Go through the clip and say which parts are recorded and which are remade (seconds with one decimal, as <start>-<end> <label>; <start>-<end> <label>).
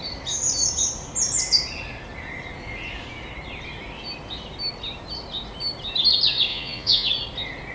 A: 0.0-6.5 recorded; 6.5-7.1 remade; 7.1-7.7 recorded